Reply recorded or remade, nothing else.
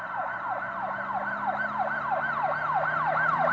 recorded